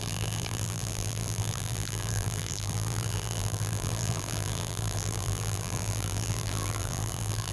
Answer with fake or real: fake